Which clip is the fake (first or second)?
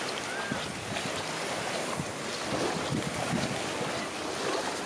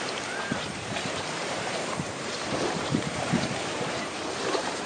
second